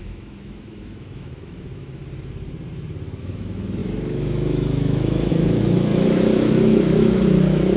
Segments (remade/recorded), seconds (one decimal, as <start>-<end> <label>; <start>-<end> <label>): 0.0-2.0 remade; 2.0-3.2 recorded; 3.2-7.8 remade

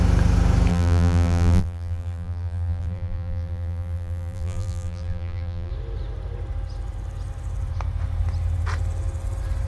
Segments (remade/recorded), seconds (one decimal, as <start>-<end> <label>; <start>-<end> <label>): 0.0-0.7 recorded; 0.7-5.7 remade; 5.7-9.7 recorded

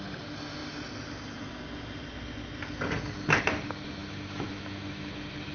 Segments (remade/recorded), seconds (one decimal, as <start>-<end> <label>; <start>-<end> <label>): 0.0-4.0 recorded; 4.0-5.1 remade; 5.1-5.5 recorded

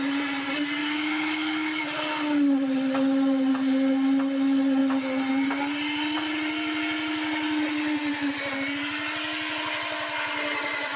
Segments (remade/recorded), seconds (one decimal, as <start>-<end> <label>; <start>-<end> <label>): 0.0-0.8 recorded; 0.8-1.8 remade; 1.8-11.0 recorded

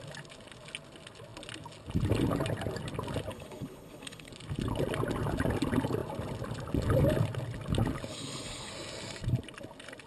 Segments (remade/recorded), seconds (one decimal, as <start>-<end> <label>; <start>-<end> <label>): 0.0-3.3 recorded; 3.3-4.3 remade; 4.3-8.1 recorded; 8.1-8.7 remade; 8.7-10.1 recorded

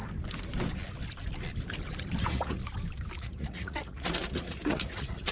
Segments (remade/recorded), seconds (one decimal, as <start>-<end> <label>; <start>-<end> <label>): 0.0-2.2 recorded; 2.2-2.6 remade; 2.6-3.1 recorded; 3.1-5.3 remade

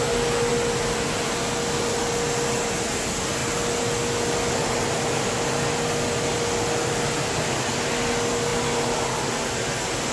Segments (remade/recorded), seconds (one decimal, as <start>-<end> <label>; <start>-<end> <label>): 0.0-10.1 recorded